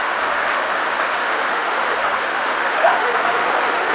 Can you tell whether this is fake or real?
fake